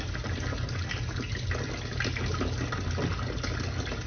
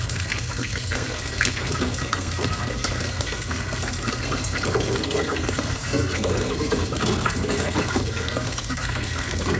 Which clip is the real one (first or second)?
first